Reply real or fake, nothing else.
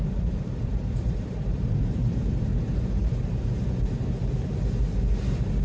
fake